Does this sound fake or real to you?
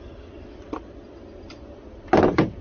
real